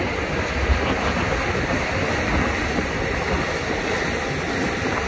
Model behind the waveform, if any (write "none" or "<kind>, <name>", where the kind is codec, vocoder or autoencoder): none